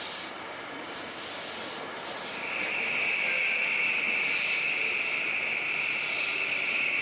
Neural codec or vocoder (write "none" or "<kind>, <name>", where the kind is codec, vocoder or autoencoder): none